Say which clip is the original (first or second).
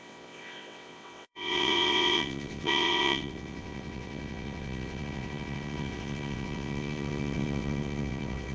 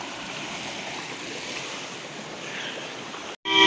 second